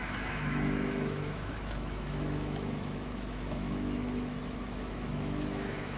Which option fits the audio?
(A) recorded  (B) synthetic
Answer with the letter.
B